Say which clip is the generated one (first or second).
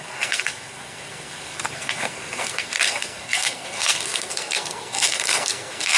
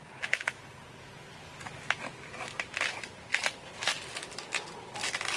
first